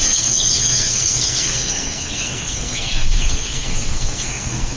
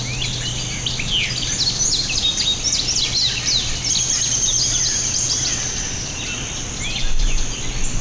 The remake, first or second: first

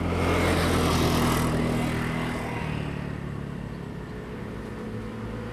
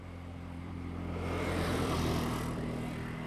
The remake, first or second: second